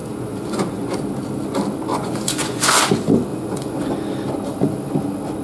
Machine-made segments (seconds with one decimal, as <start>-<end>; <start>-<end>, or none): 0.0-1.1; 1.9-2.8; 3.3-3.9